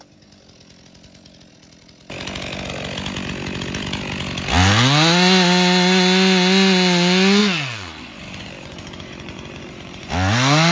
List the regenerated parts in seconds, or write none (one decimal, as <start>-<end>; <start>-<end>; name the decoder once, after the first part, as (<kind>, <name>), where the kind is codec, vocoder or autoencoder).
7.4-10.1 (vocoder, Vocos)

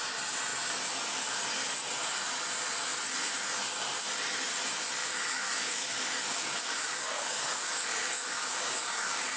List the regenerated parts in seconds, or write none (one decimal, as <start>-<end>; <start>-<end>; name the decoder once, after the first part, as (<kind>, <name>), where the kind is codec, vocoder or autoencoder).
5.0-9.4 (codec, DAC)

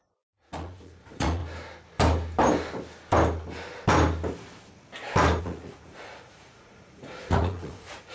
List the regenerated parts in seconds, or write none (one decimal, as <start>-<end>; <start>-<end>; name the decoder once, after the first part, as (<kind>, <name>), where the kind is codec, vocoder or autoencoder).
0.0-1.4 (vocoder, Vocos); 5.4-8.1

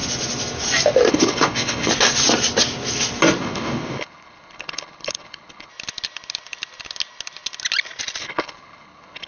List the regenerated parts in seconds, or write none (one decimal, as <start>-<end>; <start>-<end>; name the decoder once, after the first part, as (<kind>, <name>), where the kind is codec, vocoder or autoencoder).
1.1-1.9 (codec, HILCodec); 3.4-5.7; 8.2-9.3

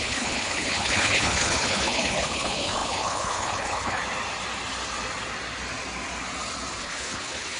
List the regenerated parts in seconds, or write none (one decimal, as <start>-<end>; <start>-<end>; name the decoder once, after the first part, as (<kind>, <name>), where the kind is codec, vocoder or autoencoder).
0.0-4.0 (codec, HILCodec); 6.8-7.6

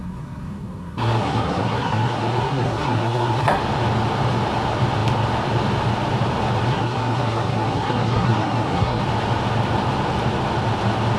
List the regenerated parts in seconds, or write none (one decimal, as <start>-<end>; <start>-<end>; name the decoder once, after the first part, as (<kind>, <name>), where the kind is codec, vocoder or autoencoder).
0.0-3.6 (codec, SNAC); 6.7-9.0